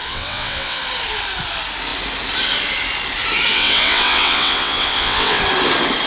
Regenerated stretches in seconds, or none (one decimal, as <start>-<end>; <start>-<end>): 0.0-0.8; 3.5-5.4